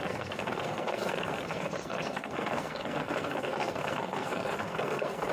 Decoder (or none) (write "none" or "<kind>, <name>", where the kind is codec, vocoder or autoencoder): codec, SNAC